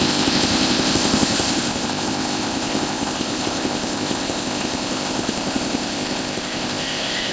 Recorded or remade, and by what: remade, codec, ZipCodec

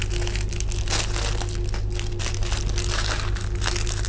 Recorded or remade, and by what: recorded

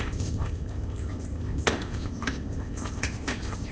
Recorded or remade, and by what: remade, codec, ZipCodec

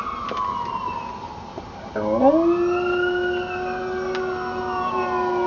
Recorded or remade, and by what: recorded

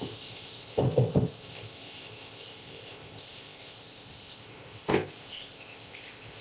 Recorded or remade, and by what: remade, codec, ZipCodec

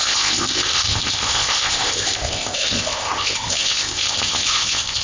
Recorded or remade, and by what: remade, codec, ZipCodec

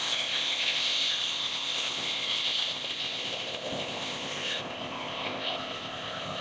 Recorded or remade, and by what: remade, codec, ZipCodec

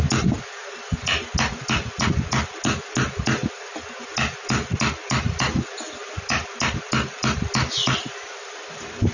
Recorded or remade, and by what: recorded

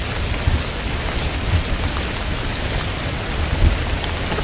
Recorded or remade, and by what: recorded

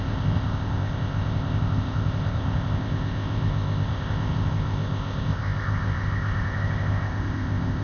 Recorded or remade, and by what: remade, codec, ZipCodec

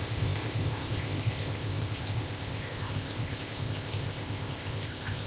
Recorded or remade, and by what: remade, codec, ZipCodec